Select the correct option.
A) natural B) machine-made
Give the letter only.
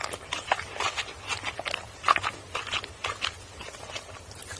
A